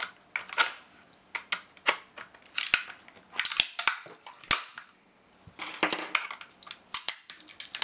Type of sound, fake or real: real